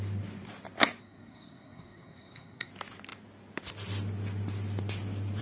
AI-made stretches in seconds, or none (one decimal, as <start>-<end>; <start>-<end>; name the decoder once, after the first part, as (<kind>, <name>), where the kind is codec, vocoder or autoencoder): 1.0-2.7 (codec, SNAC)